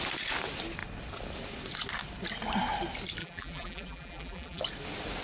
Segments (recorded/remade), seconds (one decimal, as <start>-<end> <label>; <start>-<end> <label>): 0.0-3.2 recorded; 3.2-4.6 remade; 4.6-5.2 recorded